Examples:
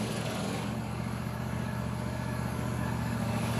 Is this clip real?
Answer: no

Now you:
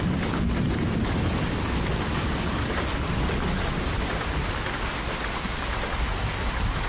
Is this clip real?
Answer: yes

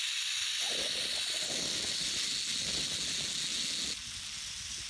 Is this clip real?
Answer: yes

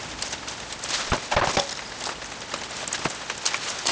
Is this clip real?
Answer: yes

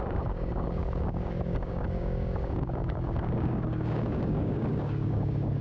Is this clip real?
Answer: no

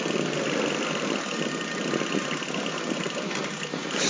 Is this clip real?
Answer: yes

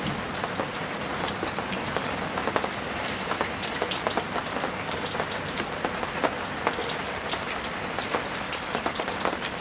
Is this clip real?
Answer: yes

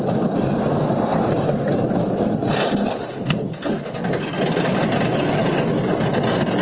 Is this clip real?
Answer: yes